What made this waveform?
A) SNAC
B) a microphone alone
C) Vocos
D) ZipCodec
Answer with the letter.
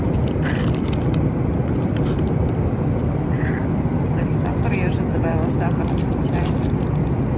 B